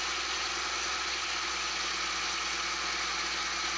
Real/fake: real